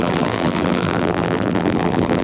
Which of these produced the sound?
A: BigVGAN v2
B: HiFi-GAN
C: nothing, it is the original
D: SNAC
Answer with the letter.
A